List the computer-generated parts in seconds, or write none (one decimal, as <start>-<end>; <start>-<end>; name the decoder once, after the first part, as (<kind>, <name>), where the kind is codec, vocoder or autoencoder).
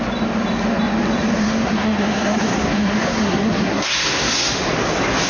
1.4-4.5 (codec, SNAC)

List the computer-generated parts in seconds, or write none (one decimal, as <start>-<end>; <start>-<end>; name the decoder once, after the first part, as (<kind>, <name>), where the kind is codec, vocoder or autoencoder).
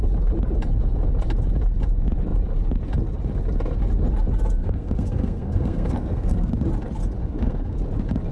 4.6-6.5 (codec, SNAC); 7.2-7.8